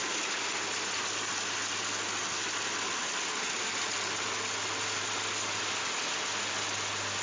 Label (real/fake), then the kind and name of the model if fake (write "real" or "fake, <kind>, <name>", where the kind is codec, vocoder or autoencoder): real